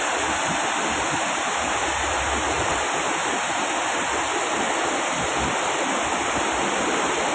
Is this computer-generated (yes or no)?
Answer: no